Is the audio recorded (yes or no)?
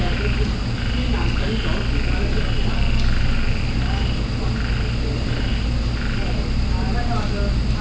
yes